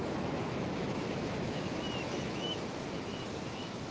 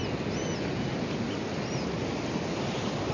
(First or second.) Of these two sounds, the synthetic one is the first